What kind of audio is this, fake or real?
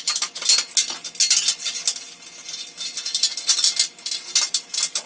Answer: real